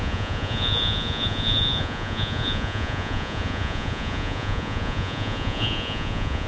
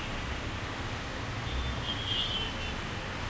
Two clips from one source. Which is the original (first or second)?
second